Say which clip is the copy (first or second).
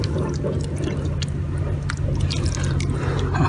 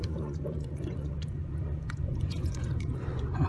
second